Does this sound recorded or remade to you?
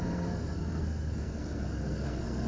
remade